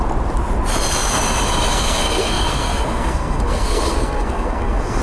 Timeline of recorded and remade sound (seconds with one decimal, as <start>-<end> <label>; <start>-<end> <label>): 0.0-1.7 recorded; 1.7-5.0 remade